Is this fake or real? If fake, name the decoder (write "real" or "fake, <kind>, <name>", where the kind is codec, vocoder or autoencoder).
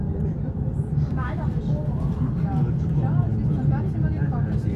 real